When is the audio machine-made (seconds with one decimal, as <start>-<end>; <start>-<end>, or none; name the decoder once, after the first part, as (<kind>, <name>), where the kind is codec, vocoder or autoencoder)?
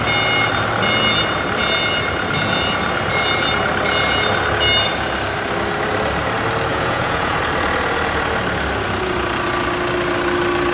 6.7-7.4 (vocoder, Vocos)